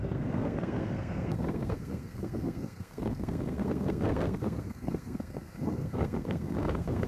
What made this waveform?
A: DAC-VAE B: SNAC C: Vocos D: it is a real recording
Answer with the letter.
B